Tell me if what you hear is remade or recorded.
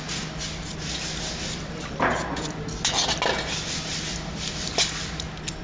recorded